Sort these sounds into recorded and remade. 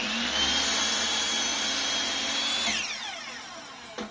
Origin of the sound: recorded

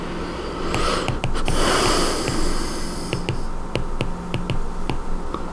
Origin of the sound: recorded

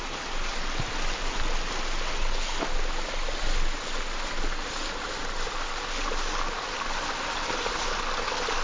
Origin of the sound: recorded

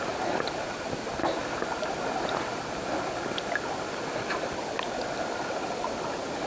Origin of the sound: recorded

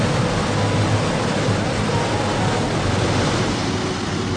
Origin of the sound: recorded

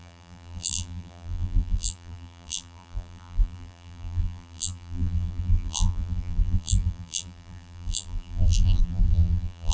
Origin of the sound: remade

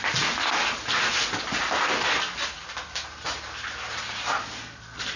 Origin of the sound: recorded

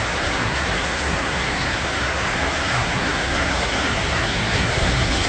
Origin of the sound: remade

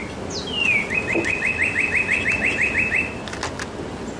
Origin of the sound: recorded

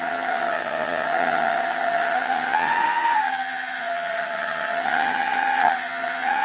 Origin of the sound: remade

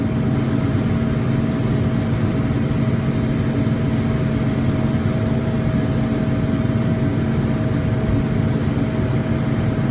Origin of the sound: recorded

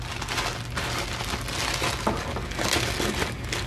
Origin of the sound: recorded